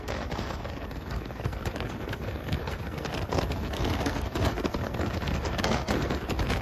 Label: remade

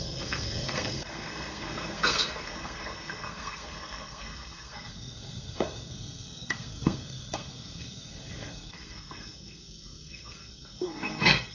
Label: remade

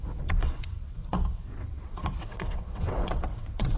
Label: remade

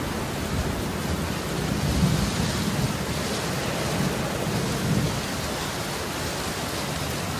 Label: recorded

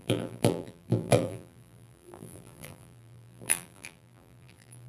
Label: remade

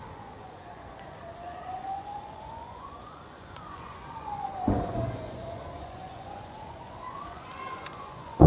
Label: remade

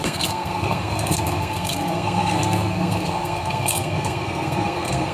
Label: remade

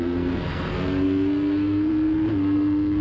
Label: remade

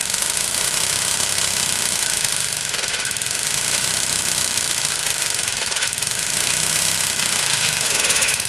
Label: remade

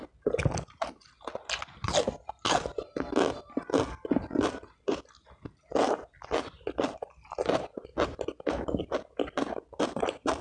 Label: recorded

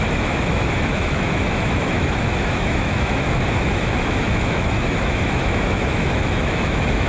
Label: remade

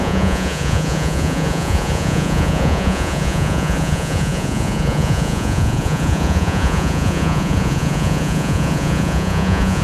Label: remade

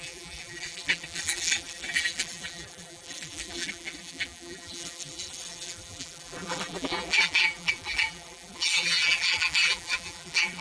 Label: remade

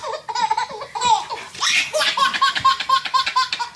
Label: recorded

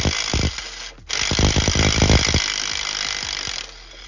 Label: recorded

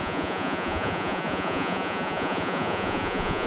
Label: remade